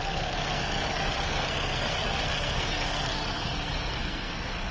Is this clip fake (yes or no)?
yes